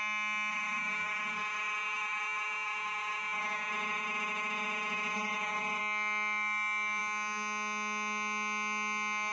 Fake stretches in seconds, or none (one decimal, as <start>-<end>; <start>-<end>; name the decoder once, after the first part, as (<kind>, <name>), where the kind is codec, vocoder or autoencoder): 0.5-5.8 (vocoder, Vocos)